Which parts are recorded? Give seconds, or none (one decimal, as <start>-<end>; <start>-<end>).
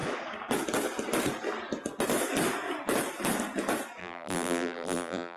0.0-4.0